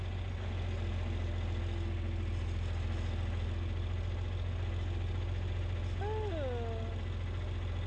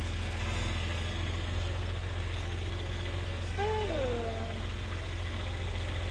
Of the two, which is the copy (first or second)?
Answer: second